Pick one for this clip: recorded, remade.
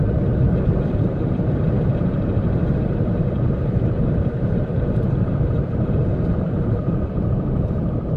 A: remade